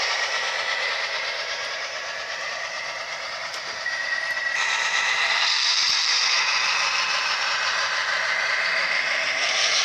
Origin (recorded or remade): remade